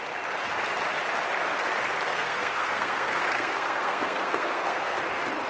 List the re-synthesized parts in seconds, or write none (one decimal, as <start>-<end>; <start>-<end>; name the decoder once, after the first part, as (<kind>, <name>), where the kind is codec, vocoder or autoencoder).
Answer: 2.1-5.0 (codec, SNAC)